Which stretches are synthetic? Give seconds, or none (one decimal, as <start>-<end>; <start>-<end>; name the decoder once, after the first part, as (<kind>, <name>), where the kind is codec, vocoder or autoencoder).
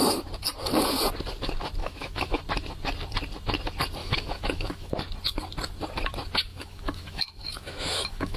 1.8-2.4 (autoencoder, DAC-VAE); 4.0-4.9; 6.5-8.4